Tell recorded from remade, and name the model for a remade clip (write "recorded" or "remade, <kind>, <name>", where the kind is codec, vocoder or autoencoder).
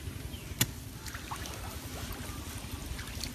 recorded